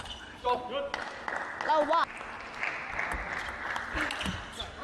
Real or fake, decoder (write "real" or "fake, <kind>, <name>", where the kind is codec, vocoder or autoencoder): real